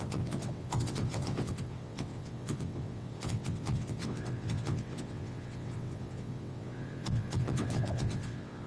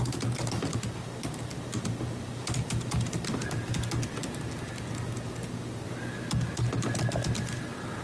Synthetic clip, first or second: first